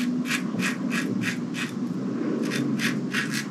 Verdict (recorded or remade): recorded